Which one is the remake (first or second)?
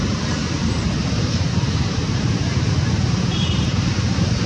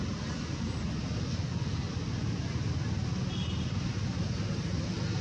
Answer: first